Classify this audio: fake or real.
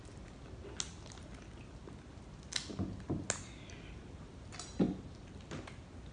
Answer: real